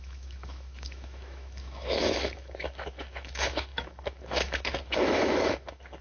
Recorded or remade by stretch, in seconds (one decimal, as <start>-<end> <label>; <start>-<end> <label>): 0.0-6.0 remade